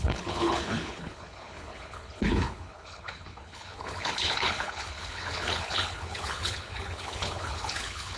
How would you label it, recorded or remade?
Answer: remade